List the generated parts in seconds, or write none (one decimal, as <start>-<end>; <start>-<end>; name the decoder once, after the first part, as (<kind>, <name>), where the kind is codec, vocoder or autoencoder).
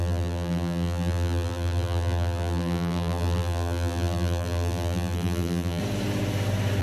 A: 0.0-5.8 (vocoder, BigVGAN v2)